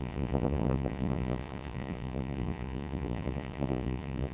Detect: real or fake fake